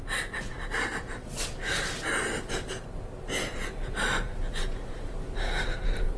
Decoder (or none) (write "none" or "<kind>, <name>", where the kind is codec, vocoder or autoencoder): none